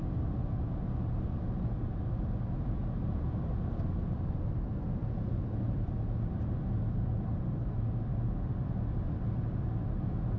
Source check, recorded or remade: recorded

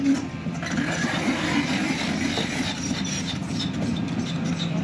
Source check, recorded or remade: recorded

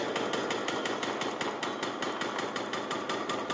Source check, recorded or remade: recorded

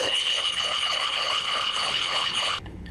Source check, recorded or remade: remade